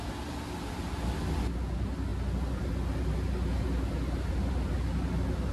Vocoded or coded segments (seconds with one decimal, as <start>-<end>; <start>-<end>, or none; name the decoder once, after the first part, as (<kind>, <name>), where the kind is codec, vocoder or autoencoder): none